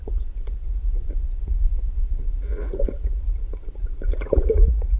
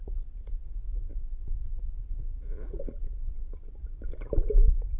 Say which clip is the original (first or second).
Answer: second